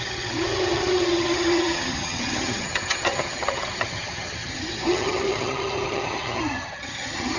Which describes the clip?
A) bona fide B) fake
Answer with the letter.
B